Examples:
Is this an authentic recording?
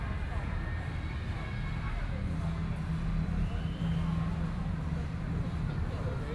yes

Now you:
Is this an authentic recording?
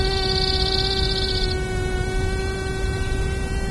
yes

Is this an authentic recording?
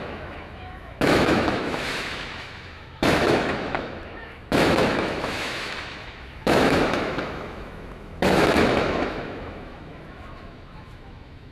no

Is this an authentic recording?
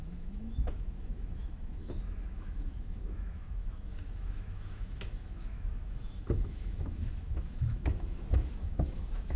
no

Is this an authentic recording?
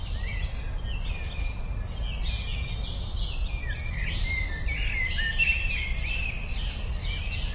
yes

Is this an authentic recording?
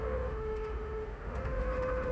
no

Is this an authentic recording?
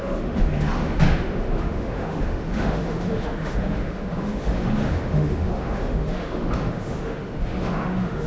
no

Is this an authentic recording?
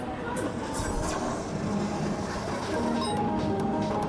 yes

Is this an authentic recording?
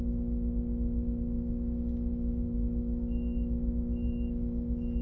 no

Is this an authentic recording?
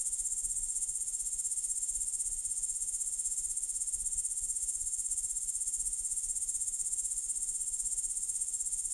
no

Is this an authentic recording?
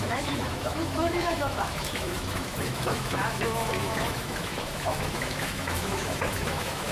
no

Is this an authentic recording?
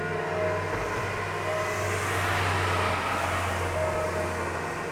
yes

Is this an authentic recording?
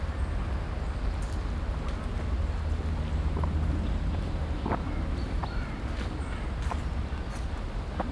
yes